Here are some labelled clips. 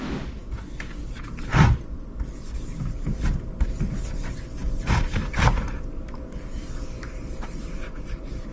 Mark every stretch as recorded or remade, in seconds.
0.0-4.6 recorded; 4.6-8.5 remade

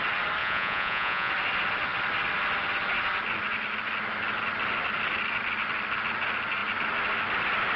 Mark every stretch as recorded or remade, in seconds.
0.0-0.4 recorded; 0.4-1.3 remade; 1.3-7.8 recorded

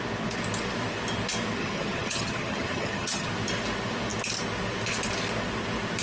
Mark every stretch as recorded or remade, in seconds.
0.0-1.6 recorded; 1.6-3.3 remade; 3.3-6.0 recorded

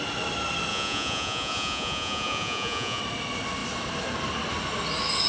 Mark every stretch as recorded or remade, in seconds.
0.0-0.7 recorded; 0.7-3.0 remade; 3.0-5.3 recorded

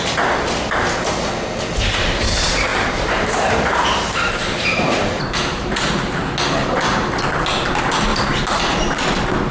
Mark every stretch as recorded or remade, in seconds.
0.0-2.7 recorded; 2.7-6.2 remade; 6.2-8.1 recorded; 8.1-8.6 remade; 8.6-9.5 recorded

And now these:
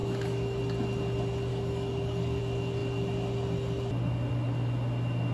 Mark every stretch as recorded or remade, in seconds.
0.0-0.6 remade; 0.6-1.5 recorded; 1.5-2.4 remade; 2.4-5.3 recorded

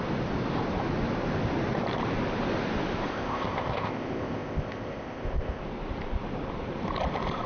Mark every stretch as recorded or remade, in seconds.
0.0-3.1 recorded; 3.1-5.6 remade; 5.6-7.5 recorded

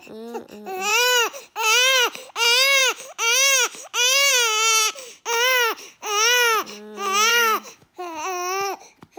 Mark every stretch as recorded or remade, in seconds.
0.0-0.9 recorded; 0.9-1.4 remade; 1.4-2.8 recorded; 2.8-4.3 remade; 4.3-7.3 recorded; 7.3-8.0 remade; 8.0-9.2 recorded